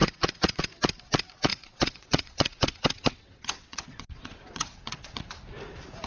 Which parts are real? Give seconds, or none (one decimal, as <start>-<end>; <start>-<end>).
0.6-1.5; 5.2-6.1

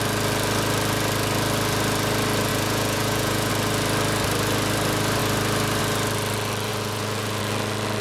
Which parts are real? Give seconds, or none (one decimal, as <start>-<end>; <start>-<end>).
0.0-2.5; 3.5-6.7; 7.4-8.0

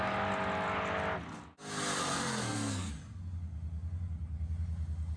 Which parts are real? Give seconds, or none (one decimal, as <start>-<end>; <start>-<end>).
0.0-2.0; 2.9-5.2

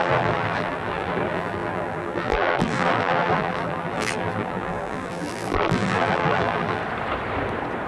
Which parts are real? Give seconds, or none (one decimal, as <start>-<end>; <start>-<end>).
6.8-7.9

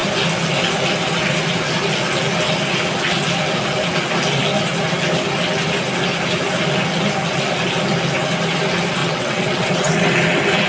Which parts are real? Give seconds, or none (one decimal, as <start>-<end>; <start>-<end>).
0.0-9.0; 9.9-10.7

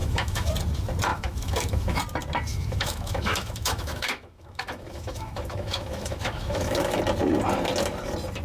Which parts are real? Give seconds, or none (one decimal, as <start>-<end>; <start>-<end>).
0.5-1.1; 2.0-2.5; 7.0-8.4